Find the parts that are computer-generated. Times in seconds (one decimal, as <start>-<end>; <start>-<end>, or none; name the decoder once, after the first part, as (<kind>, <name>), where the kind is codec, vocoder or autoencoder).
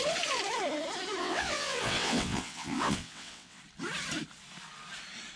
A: 1.2-3.6 (vocoder, WaveNeXt)